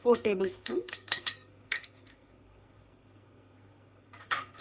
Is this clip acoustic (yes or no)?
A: no